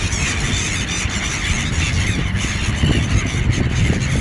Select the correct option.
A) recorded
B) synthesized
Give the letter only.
A